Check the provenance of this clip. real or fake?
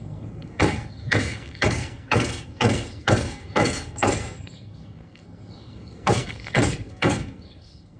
fake